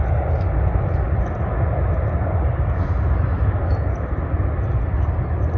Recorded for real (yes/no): yes